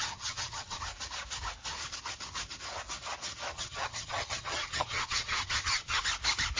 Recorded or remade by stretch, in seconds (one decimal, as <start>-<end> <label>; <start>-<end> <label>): 0.0-0.8 remade; 0.8-3.5 recorded; 3.5-6.0 remade; 6.0-6.6 recorded